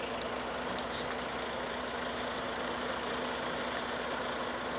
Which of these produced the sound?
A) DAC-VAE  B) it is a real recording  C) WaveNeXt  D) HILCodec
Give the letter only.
B